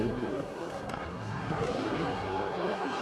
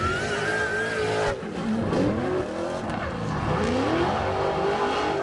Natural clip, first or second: second